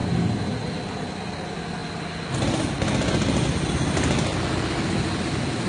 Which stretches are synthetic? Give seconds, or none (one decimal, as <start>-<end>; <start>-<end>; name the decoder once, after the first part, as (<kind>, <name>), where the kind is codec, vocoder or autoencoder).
none